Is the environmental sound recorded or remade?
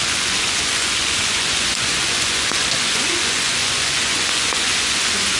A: remade